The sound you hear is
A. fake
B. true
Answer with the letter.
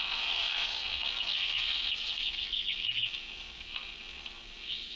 A